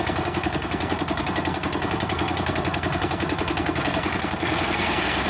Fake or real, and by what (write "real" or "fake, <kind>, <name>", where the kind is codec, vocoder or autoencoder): fake, codec, SNAC